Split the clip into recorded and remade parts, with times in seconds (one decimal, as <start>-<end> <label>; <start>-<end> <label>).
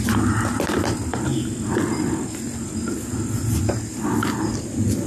0.0-5.1 recorded